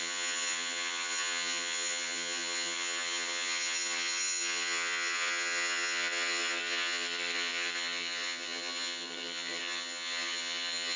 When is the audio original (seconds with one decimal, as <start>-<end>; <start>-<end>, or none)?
none